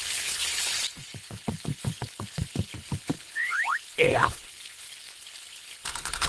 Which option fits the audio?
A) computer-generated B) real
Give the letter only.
A